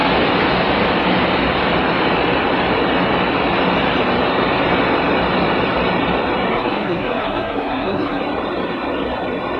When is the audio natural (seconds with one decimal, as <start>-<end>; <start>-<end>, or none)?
0.0-6.5; 8.2-9.6